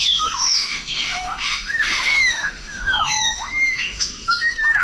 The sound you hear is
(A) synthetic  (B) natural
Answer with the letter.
A